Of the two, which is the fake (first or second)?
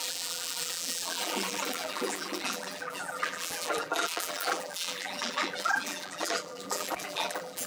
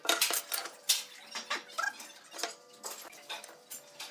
first